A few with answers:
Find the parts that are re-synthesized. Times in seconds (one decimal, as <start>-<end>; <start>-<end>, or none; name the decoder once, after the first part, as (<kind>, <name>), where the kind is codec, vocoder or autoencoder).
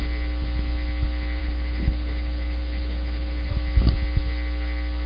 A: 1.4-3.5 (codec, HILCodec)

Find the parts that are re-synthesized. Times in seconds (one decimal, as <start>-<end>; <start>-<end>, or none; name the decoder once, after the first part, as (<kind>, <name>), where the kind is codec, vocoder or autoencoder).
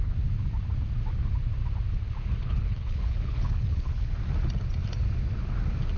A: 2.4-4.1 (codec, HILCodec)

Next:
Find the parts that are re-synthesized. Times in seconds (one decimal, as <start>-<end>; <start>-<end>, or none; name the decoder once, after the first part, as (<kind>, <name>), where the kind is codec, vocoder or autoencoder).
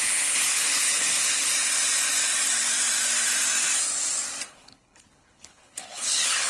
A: 0.0-1.5 (codec, HILCodec); 4.5-6.5